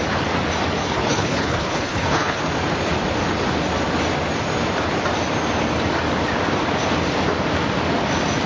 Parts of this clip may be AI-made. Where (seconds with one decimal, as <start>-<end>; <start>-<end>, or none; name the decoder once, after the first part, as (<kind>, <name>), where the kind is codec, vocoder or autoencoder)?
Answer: 0.8-2.4 (codec, HILCodec)